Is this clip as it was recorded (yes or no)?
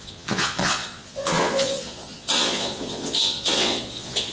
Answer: no